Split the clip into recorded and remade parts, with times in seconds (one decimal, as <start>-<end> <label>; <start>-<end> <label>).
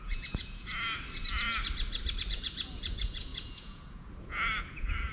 0.0-0.7 remade; 0.7-2.3 recorded; 2.3-5.1 remade